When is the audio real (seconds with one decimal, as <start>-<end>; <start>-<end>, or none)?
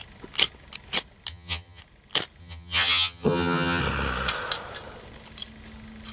0.0-1.3; 1.8-2.4; 3.8-6.1